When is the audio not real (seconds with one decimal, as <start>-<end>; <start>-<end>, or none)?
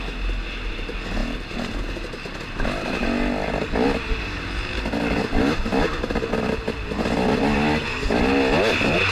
none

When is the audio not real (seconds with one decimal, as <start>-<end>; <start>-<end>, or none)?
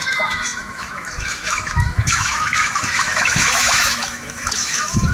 0.0-5.1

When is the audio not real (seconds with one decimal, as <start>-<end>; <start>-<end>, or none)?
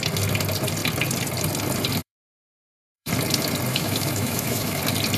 2.0-3.1; 3.7-4.8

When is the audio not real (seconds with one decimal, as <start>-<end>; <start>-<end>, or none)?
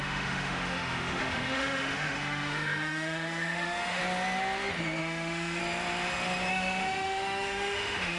0.0-4.0; 5.0-5.6; 6.5-8.2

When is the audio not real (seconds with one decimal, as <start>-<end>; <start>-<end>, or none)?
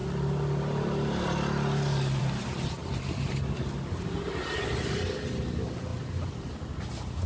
none